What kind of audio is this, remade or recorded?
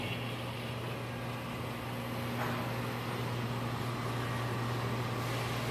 recorded